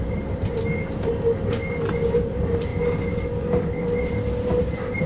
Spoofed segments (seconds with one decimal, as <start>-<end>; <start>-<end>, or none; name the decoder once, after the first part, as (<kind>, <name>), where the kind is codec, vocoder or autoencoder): 0.0-0.5 (vocoder, BigVGAN v2); 2.3-2.7; 4.6-5.1

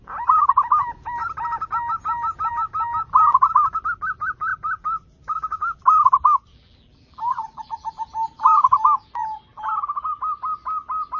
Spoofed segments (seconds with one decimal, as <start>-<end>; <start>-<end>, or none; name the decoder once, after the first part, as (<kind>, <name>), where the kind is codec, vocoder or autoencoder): 4.5-5.8 (vocoder, BigVGAN v2); 6.5-7.9; 9.5-10.1

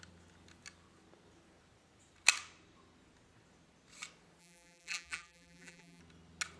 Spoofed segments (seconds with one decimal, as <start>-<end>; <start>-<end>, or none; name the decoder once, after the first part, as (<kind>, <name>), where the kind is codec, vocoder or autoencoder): 4.4-6.0 (vocoder, BigVGAN v2)

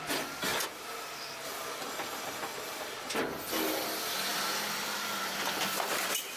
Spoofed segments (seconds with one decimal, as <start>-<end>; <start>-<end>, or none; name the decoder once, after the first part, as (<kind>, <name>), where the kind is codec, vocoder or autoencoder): 0.5-3.2 (vocoder, BigVGAN v2); 4.3-5.2

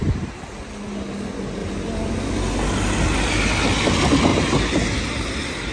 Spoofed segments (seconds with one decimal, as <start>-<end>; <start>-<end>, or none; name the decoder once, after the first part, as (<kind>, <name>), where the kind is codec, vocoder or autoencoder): 1.6-2.3 (vocoder, BigVGAN v2); 4.3-5.7